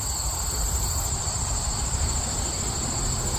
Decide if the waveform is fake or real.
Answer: real